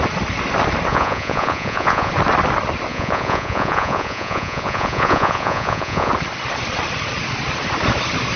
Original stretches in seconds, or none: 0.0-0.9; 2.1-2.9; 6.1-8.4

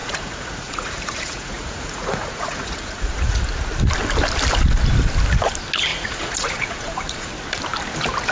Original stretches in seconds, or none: 3.4-5.9; 7.3-8.3

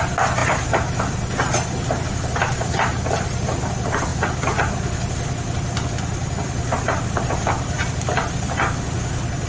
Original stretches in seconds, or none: 0.0-9.5

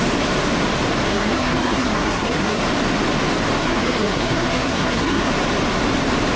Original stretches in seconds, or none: 0.0-1.1; 2.6-3.6; 5.3-6.4

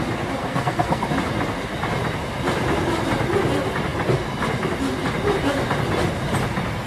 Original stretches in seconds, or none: 0.0-0.4; 1.1-6.9